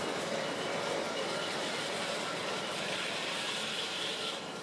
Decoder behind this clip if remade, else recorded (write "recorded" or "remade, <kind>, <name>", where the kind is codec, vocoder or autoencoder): remade, vocoder, BigVGAN v2